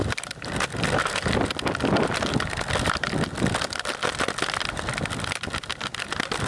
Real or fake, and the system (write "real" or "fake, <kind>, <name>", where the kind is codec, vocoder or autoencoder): real